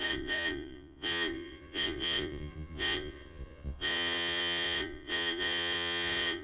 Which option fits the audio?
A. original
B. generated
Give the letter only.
B